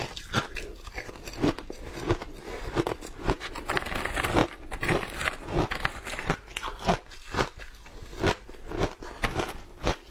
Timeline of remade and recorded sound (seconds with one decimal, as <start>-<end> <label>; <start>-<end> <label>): 0.0-10.1 recorded